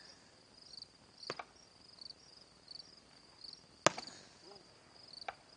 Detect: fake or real real